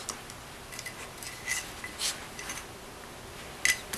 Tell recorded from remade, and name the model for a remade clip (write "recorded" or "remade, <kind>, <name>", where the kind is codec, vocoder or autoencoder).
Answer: recorded